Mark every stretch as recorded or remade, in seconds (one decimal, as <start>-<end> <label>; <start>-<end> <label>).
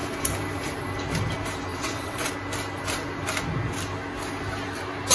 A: 0.0-1.7 recorded; 1.7-2.3 remade; 2.3-5.1 recorded